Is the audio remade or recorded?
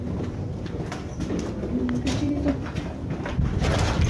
recorded